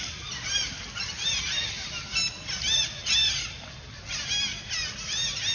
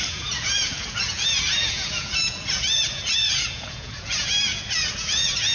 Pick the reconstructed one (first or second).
second